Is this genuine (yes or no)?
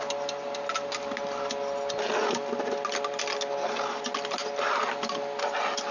yes